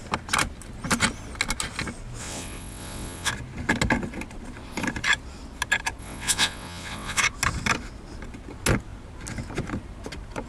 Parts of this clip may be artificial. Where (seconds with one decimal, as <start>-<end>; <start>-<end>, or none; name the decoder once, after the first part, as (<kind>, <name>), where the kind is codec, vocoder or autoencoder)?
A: 2.2-3.3 (vocoder, WaveNeXt); 6.0-7.2